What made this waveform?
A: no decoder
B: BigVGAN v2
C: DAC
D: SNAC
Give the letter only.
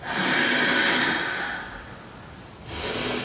A